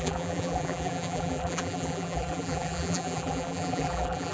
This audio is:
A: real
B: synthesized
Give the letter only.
B